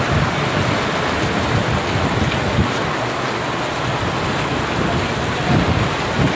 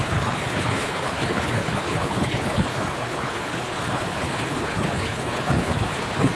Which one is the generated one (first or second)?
second